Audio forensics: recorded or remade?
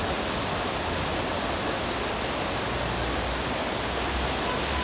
recorded